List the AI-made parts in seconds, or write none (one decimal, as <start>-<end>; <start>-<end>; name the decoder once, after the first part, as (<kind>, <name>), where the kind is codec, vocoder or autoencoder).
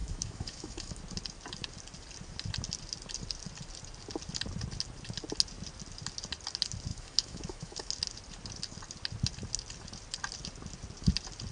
0.0-1.0 (autoencoder, DAC-VAE); 6.9-7.9